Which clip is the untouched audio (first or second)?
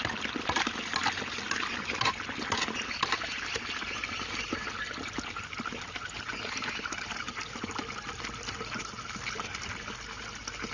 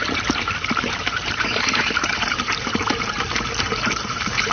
first